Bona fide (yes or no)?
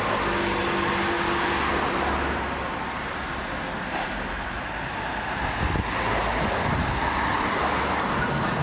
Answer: yes